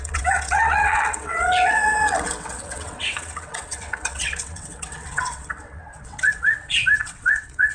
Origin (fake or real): fake